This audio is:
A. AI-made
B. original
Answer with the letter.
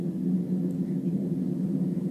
B